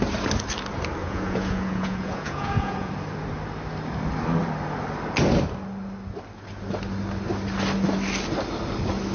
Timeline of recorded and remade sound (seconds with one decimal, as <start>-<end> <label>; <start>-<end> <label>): 0.0-1.0 recorded; 1.0-2.9 remade; 2.9-9.1 recorded